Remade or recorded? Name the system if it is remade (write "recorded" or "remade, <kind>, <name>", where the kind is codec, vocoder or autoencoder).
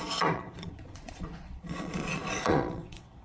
remade, vocoder, Vocos